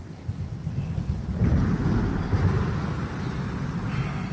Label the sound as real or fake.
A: real